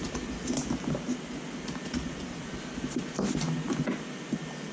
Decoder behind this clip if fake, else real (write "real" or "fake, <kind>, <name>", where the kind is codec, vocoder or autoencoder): real